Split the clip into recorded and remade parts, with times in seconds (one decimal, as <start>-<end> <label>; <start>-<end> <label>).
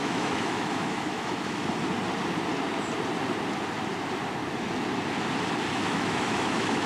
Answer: 0.0-1.6 remade; 1.6-5.7 recorded; 5.7-6.9 remade